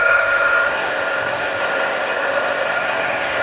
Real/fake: fake